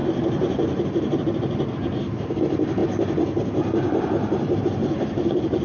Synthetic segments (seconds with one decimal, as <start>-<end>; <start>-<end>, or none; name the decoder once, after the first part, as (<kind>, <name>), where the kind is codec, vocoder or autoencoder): none